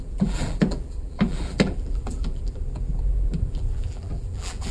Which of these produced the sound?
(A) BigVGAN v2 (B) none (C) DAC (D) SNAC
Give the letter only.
A